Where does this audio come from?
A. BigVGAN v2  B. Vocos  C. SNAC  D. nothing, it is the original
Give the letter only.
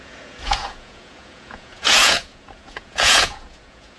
B